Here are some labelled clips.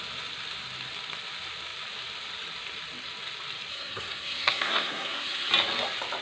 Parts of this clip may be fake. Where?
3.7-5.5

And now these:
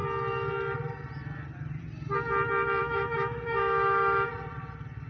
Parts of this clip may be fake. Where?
2.8-4.3

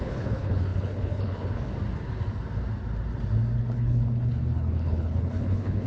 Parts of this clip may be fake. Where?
0.0-1.7; 3.6-5.9

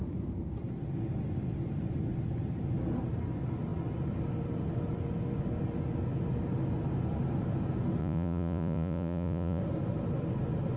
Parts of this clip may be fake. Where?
8.0-9.6